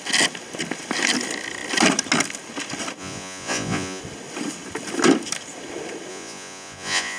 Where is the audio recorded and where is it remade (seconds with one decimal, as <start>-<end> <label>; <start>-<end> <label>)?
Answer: 0.0-3.0 recorded; 3.0-4.0 remade; 4.0-6.1 recorded; 6.1-7.2 remade